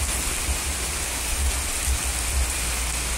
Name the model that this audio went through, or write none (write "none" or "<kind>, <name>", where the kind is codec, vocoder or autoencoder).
none